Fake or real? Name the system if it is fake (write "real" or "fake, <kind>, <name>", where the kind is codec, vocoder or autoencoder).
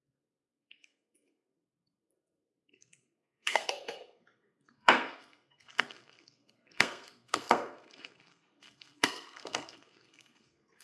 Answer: fake, codec, SNAC